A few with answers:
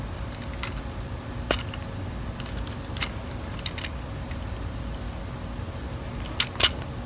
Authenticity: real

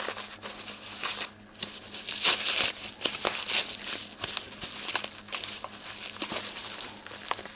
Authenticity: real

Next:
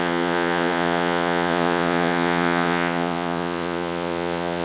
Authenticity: fake